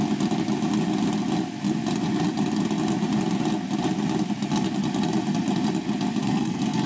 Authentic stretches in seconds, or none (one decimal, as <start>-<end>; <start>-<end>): 0.0-6.2